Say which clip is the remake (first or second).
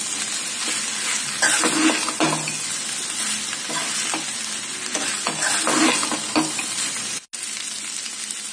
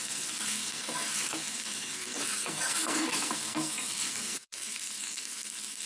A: second